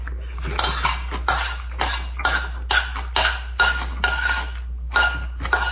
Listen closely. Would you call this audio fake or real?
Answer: real